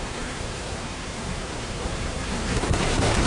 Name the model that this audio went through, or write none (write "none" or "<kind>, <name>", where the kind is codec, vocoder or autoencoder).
codec, SNAC